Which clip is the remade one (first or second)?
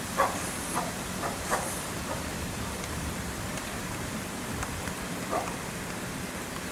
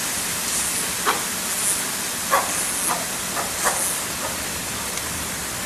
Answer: first